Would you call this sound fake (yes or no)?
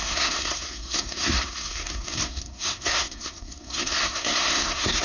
yes